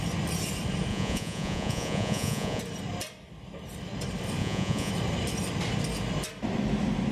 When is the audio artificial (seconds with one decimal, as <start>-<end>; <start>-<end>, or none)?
0.9-2.6; 4.4-4.9